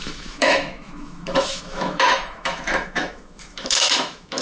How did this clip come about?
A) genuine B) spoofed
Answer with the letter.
B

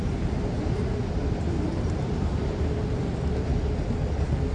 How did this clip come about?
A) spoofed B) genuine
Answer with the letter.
B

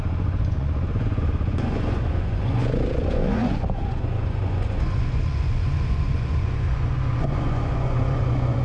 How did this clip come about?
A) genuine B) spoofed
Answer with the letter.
B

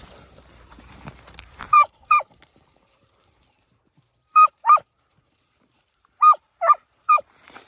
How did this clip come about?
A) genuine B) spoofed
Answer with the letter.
B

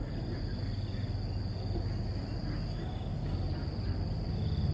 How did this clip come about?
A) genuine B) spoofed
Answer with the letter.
A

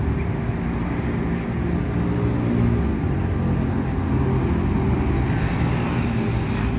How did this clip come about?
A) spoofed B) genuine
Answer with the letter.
B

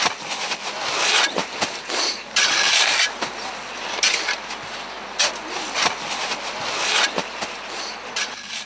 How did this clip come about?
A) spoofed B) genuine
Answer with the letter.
B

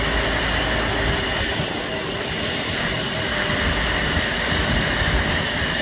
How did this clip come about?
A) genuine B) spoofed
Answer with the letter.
A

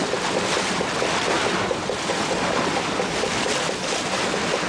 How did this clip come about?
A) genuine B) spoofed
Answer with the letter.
A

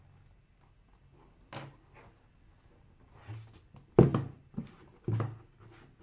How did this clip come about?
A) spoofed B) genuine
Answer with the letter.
B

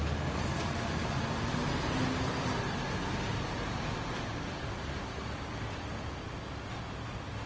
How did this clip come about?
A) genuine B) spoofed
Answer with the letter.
A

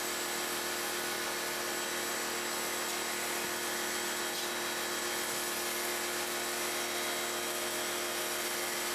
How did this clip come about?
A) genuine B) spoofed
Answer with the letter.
A